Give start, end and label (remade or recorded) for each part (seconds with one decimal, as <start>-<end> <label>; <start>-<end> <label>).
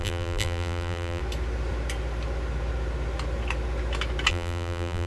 0.0-1.2 remade; 1.2-4.3 recorded; 4.3-5.1 remade